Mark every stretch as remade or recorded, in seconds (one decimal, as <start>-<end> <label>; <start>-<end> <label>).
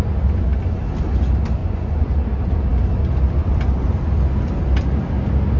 0.0-1.6 recorded; 1.6-2.2 remade; 2.2-5.6 recorded